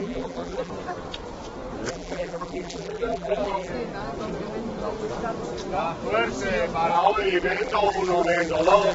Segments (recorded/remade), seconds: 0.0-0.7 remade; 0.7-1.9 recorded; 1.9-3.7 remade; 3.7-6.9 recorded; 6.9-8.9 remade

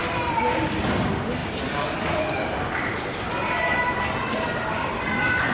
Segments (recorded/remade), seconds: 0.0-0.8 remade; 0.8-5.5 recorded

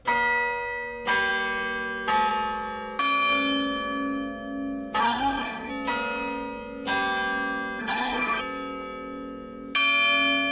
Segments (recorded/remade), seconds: 0.0-5.0 recorded; 5.0-5.7 remade; 5.7-7.8 recorded; 7.8-8.4 remade; 8.4-10.5 recorded

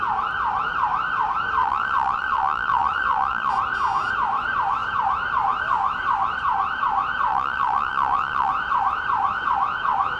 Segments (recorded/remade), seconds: 0.0-1.6 recorded; 1.6-3.5 remade; 3.5-7.3 recorded; 7.3-8.5 remade; 8.5-10.2 recorded